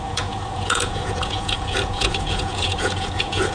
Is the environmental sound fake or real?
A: fake